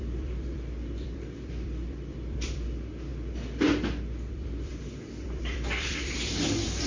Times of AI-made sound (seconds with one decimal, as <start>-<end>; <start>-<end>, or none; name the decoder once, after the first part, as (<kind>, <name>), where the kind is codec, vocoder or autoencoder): 0.0-3.1 (vocoder, BigVGAN v2); 4.3-6.9